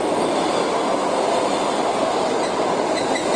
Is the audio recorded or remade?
recorded